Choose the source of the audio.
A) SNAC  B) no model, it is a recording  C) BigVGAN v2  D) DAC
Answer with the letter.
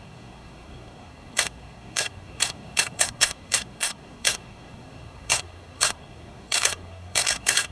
A